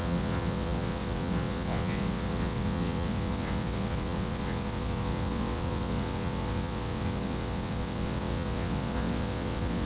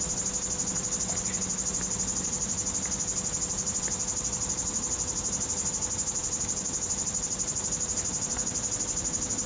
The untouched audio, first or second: second